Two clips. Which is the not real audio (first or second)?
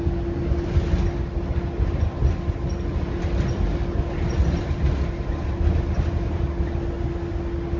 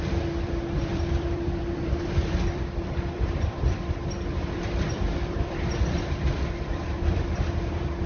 second